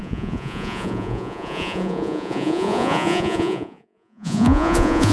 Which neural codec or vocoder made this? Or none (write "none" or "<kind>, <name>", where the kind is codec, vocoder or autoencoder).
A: vocoder, Vocos